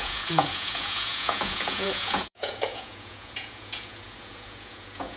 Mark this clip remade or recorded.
remade